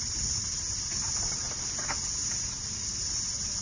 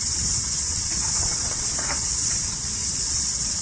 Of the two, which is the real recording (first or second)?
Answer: first